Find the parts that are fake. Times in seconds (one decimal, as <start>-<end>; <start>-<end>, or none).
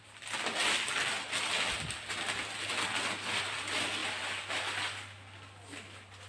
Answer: none